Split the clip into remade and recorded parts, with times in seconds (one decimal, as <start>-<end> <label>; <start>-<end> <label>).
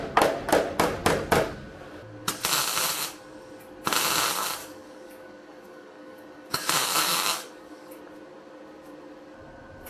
0.0-4.6 recorded; 4.6-8.0 remade; 8.0-9.9 recorded